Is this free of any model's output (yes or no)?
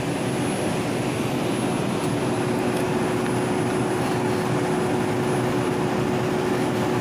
yes